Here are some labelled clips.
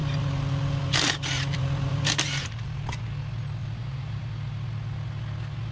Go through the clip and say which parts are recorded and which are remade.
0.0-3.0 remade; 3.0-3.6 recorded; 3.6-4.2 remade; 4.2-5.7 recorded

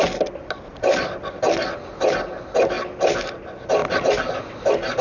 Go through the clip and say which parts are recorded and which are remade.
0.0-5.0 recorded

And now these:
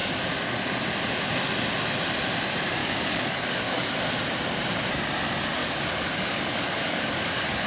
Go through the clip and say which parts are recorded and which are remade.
0.0-2.8 recorded; 2.8-3.9 remade; 3.9-5.6 recorded; 5.6-7.7 remade

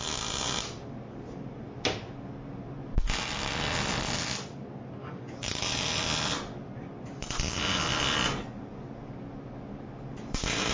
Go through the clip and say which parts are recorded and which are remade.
0.0-5.0 recorded; 5.0-5.6 remade; 5.6-10.7 recorded

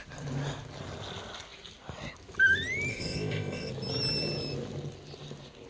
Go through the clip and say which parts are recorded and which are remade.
0.0-2.9 recorded; 2.9-3.7 remade; 3.7-5.7 recorded

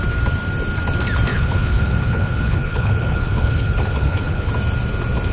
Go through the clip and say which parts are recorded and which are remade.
0.0-1.3 recorded; 1.3-4.5 remade; 4.5-5.3 recorded